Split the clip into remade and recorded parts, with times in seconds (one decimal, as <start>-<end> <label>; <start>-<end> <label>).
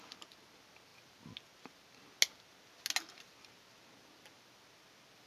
0.0-5.3 recorded